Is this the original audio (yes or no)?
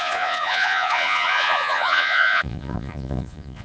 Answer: no